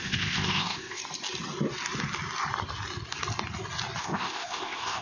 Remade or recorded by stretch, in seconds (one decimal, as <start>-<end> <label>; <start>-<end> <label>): 0.0-1.0 remade; 1.0-4.0 recorded; 4.0-5.0 remade